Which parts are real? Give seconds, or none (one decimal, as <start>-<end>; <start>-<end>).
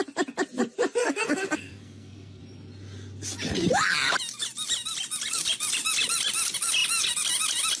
0.0-1.0; 2.4-7.8